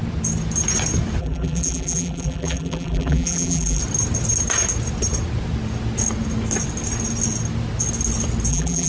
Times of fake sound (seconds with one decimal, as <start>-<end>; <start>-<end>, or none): 1.2-3.8; 8.5-8.9